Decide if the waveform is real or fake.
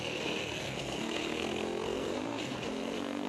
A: fake